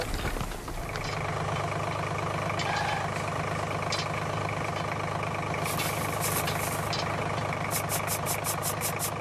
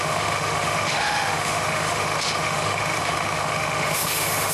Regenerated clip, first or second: second